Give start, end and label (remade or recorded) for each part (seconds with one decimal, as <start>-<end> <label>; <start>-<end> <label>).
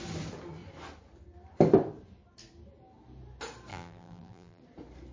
0.0-3.7 recorded; 3.7-4.6 remade; 4.6-5.1 recorded